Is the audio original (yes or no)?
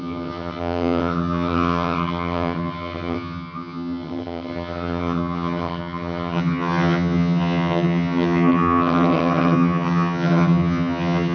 no